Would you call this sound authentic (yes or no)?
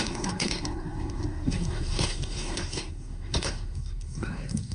no